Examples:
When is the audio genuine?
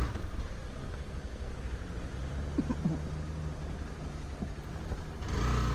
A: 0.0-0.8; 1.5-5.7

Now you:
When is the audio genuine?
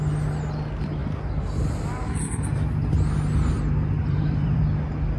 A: 0.0-4.0; 4.6-5.2